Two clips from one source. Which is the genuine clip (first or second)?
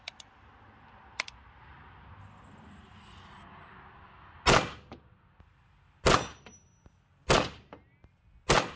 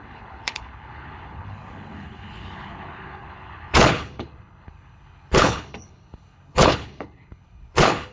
first